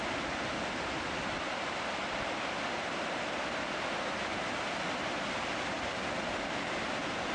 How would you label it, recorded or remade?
recorded